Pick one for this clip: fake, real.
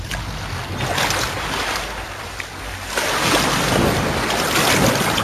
real